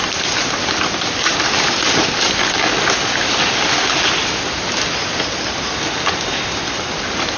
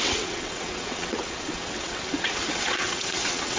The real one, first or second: first